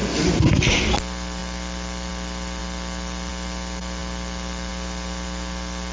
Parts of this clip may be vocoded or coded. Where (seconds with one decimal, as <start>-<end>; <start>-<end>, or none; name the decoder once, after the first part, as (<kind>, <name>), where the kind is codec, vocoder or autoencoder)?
none